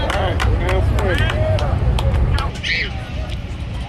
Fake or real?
real